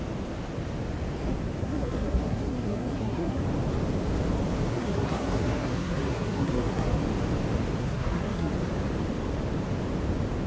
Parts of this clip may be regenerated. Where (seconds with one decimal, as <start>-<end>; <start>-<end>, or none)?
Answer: 1.6-3.4; 4.7-7.0; 7.8-8.5